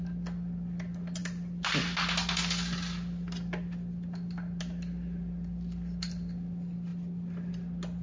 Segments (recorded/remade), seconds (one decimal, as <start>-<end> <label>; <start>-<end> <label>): 0.0-8.0 recorded